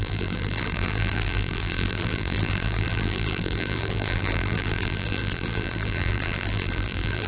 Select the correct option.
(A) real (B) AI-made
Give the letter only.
B